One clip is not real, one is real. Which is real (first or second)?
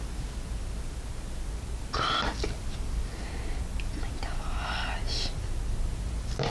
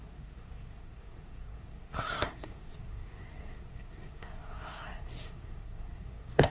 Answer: first